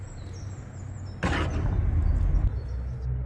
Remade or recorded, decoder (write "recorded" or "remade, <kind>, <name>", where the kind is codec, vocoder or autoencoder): recorded